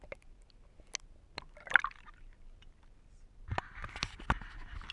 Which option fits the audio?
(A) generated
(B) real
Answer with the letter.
B